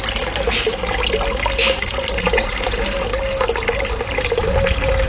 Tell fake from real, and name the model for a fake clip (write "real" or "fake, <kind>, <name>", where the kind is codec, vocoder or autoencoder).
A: real